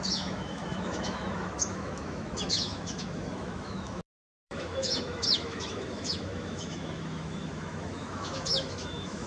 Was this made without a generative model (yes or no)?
no